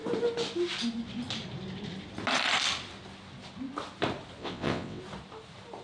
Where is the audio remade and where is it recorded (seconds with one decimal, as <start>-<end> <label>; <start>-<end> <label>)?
0.0-4.4 recorded; 4.4-5.0 remade; 5.0-5.8 recorded